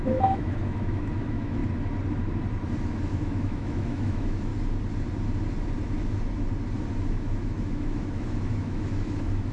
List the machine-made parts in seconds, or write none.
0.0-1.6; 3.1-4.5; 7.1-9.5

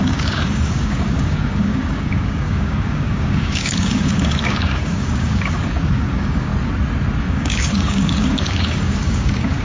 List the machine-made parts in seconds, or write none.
0.0-6.5; 7.2-9.6

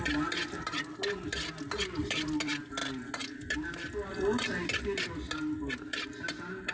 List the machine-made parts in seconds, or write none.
none